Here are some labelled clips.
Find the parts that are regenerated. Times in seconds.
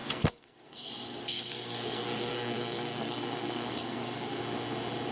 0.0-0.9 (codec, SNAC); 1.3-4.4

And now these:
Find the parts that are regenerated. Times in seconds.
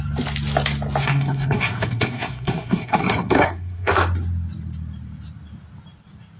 1.0-3.9 (codec, SNAC)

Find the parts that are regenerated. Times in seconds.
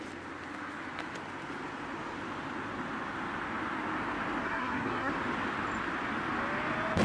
4.4-5.1 (codec, SNAC)